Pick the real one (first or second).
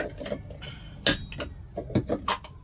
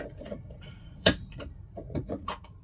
first